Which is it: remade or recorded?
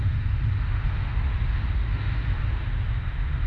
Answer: remade